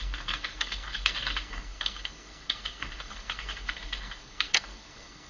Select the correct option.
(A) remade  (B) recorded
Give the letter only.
A